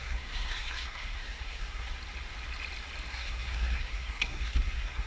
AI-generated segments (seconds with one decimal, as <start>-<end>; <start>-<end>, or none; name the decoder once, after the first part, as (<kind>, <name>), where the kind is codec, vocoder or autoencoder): 0.0-1.9 (codec, SNAC); 3.1-5.1